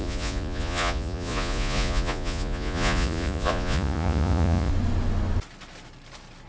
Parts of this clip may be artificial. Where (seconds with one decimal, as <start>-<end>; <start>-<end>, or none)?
0.0-4.7

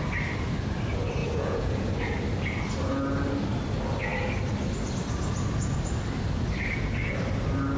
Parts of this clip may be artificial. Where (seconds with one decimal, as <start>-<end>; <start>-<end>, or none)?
1.2-1.9

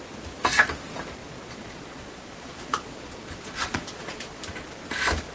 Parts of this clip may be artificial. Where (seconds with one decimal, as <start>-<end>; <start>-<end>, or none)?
1.2-4.4

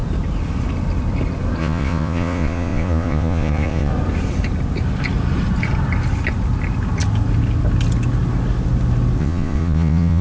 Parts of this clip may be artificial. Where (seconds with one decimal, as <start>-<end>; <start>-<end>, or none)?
1.6-3.9; 9.2-10.2

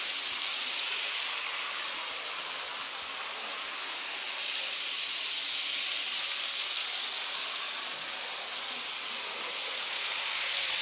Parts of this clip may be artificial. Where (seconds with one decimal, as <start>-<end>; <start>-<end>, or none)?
0.5-1.2; 9.6-10.2

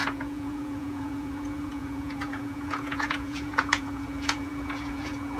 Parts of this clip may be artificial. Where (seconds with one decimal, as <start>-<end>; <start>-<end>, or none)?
0.0-5.4